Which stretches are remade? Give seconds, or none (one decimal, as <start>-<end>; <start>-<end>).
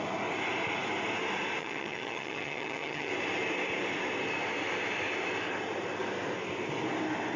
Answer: 1.6-3.1